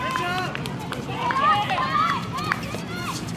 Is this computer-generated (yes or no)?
yes